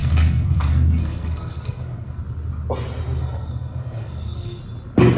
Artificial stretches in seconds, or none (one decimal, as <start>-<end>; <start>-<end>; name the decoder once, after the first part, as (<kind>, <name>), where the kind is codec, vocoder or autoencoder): 0.0-2.2 (codec, SNAC); 3.2-4.6